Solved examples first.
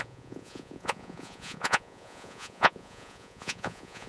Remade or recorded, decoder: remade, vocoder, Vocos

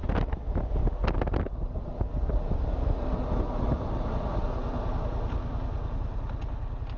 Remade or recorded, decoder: recorded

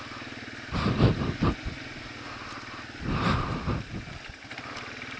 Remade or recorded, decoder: recorded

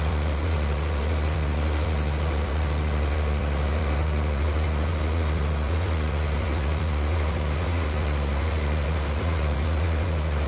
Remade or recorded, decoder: remade, vocoder, Vocos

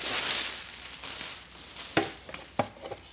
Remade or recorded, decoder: recorded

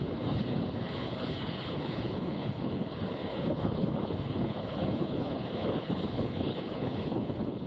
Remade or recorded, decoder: remade, codec, HILCodec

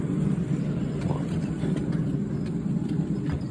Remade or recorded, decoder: remade, vocoder, BigVGAN v2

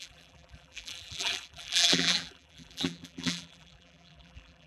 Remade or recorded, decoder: remade, vocoder, BigVGAN v2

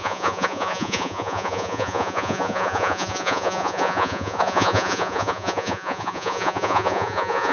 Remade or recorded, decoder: remade, vocoder, Vocos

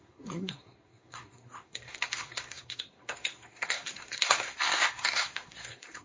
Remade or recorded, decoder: remade, codec, SNAC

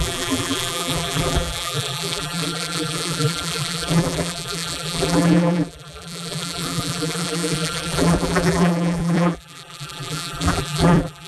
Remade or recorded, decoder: remade, vocoder, BigVGAN v2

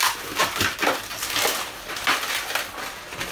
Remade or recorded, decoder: recorded